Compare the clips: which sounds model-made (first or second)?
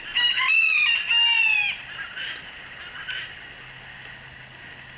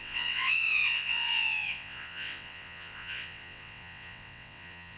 second